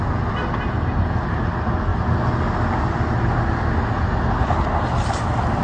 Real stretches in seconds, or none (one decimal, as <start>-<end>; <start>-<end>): 0.0-5.6